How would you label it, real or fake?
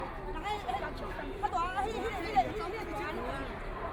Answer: real